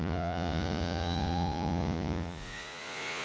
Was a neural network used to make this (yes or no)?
yes